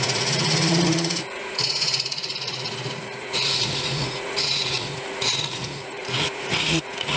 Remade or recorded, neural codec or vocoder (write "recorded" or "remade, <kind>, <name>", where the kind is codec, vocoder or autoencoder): remade, vocoder, Vocos